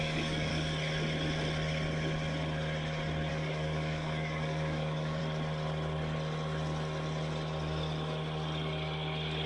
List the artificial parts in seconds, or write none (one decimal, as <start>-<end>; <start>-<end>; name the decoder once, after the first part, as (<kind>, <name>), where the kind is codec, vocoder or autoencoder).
0.0-0.5 (codec, DAC); 3.3-5.2